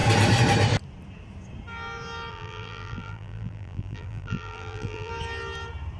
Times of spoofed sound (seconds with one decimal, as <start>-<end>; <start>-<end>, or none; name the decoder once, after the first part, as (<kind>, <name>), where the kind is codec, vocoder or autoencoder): 2.3-5.1 (vocoder, BigVGAN v2)